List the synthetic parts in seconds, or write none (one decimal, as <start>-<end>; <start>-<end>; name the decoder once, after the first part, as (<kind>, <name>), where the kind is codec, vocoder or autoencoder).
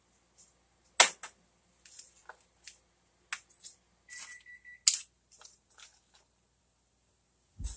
none